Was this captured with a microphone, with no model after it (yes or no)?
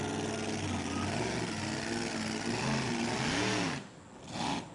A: yes